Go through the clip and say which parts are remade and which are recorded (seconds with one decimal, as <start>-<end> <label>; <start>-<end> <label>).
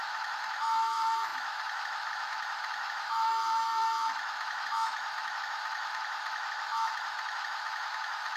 0.0-8.4 remade